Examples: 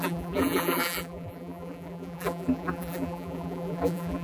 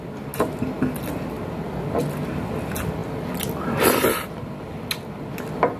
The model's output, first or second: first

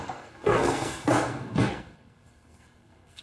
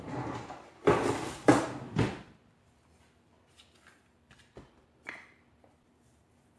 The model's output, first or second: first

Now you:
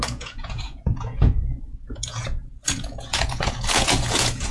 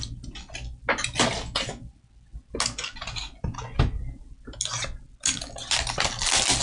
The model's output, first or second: first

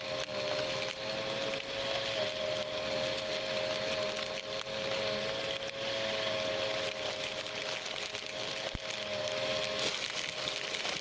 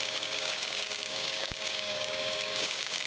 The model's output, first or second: second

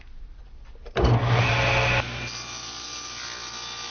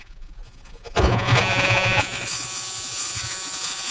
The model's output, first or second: second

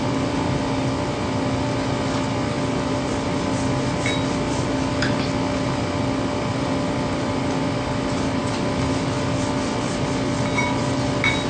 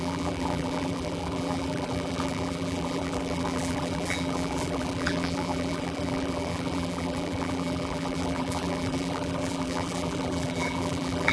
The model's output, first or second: second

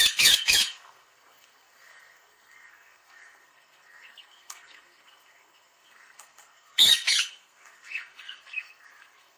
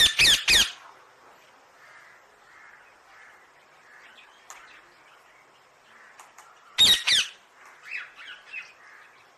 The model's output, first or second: first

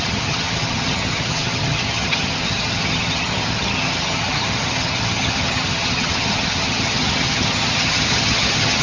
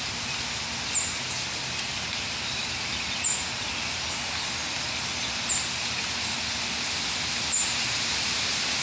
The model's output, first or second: first